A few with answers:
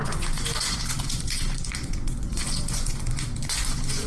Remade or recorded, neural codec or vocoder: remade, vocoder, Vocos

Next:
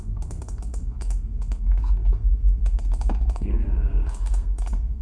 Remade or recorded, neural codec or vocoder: remade, codec, SNAC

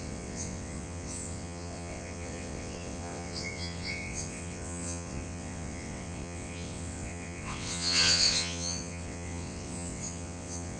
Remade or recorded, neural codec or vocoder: remade, vocoder, WaveNeXt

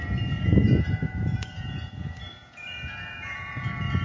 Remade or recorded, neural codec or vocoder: remade, vocoder, Vocos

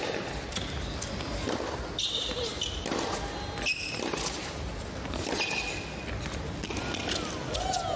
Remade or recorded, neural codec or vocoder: recorded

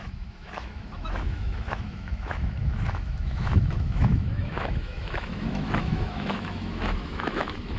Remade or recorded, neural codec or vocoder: remade, autoencoder, DAC-VAE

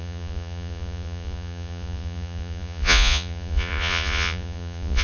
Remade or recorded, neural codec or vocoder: remade, vocoder, Vocos